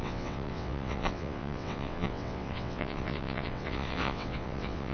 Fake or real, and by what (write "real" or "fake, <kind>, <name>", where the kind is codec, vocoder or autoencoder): fake, vocoder, WaveNeXt